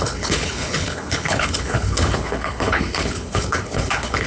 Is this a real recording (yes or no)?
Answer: no